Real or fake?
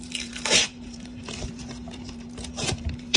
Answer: fake